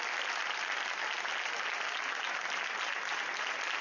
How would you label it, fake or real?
real